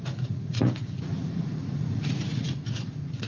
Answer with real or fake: fake